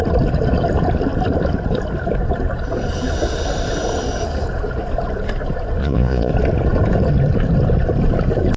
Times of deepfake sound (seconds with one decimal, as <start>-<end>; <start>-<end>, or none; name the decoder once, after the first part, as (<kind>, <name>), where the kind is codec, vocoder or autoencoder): 5.8-6.3 (vocoder, Vocos)